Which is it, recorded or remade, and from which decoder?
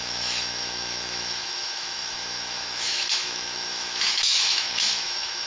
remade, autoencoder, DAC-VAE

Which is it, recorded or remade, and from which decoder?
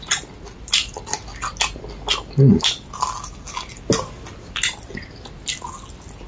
recorded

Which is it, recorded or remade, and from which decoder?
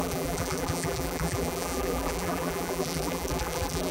remade, vocoder, BigVGAN v2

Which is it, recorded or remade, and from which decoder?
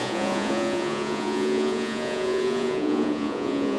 remade, vocoder, Vocos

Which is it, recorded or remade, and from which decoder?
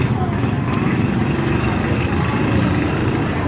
recorded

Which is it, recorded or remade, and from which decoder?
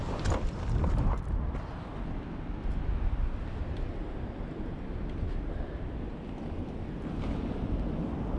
recorded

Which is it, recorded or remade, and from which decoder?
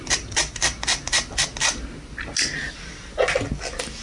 recorded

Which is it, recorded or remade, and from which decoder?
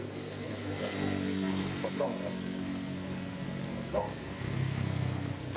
remade, codec, SNAC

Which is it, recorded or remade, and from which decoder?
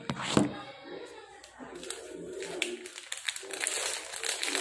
recorded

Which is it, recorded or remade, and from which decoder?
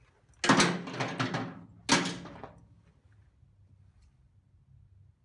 recorded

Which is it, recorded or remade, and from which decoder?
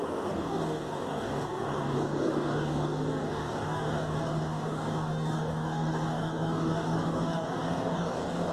remade, codec, DAC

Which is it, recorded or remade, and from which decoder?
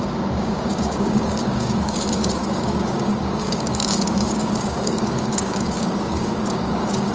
remade, codec, DAC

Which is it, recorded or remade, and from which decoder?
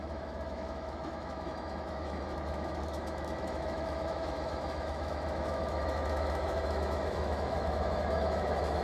remade, autoencoder, DAC-VAE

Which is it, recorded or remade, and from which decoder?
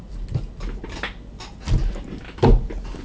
recorded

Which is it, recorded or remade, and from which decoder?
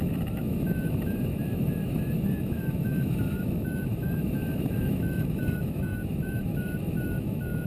remade, autoencoder, DAC-VAE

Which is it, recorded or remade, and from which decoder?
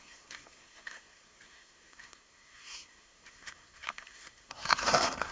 remade, codec, SNAC